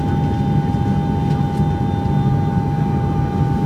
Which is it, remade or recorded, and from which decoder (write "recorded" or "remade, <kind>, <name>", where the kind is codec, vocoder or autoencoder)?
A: recorded